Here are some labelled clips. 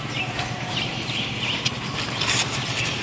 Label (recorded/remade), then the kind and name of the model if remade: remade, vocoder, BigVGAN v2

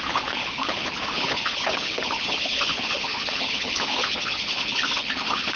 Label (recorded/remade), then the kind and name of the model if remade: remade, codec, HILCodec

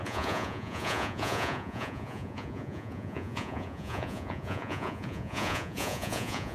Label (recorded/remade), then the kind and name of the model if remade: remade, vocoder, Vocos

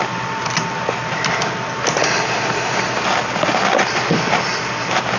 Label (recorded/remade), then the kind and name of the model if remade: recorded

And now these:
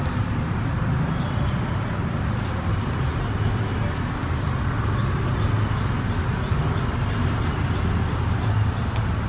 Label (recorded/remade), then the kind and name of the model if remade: recorded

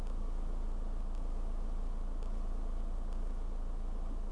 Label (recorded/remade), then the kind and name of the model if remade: recorded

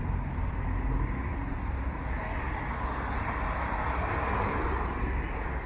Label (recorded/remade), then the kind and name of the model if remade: recorded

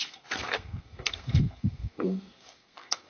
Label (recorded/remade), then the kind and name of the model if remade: remade, codec, SNAC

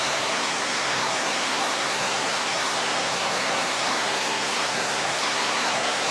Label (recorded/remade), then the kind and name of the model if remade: remade, codec, SNAC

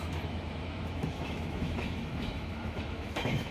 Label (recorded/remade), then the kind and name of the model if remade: remade, autoencoder, DAC-VAE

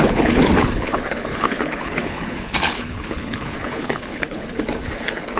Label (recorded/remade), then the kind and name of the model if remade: remade, codec, HILCodec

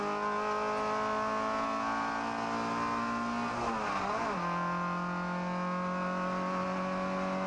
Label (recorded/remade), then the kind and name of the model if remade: recorded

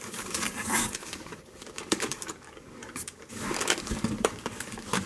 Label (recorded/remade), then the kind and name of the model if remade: remade, codec, DAC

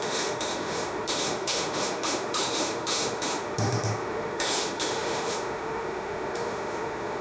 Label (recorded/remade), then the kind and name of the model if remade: remade, autoencoder, DAC-VAE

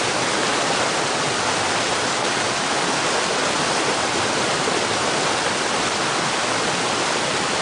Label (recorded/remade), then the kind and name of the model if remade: recorded